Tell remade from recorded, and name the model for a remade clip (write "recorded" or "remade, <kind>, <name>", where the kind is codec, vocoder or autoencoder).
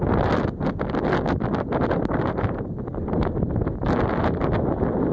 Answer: recorded